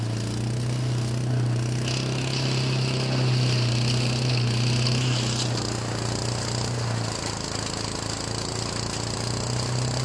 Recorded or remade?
recorded